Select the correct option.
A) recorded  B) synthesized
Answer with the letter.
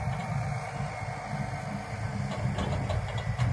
A